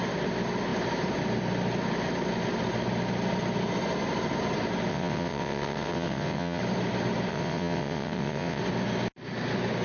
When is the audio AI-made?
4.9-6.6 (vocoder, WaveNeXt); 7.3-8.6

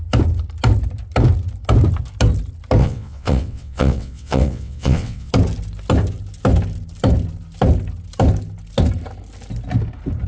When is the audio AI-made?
2.8-5.3 (vocoder, WaveNeXt)

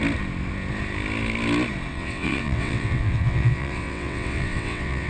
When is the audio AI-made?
1.9-5.1 (vocoder, WaveNeXt)

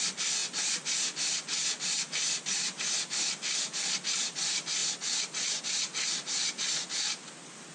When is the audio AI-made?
none